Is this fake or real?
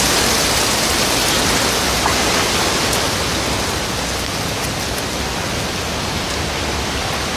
real